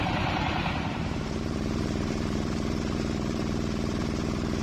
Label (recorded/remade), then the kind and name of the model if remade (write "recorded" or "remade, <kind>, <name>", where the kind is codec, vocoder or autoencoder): remade, vocoder, BigVGAN v2